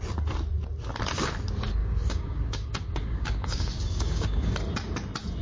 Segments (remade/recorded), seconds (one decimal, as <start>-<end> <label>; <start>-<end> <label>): 0.0-1.8 recorded; 1.8-4.5 remade; 4.5-5.4 recorded